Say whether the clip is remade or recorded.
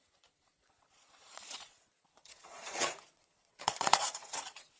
remade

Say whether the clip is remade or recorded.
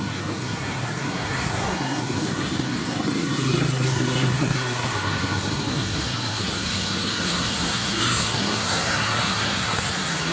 remade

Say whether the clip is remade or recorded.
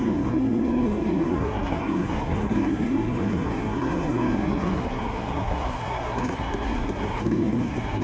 remade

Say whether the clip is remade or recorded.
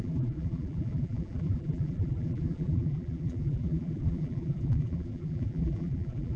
remade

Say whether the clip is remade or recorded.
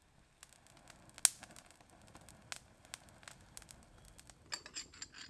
recorded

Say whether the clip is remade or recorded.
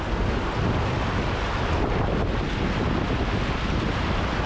recorded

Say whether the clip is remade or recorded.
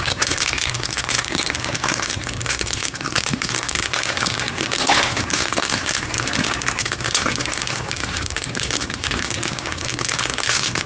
remade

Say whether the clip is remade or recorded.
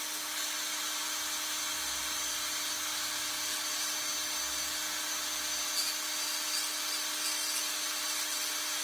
recorded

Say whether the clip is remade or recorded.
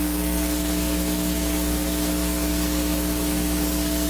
remade